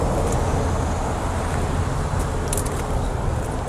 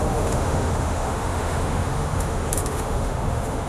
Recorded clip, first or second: first